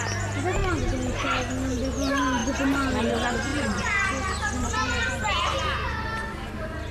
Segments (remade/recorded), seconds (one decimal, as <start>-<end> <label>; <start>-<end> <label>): 0.0-6.9 recorded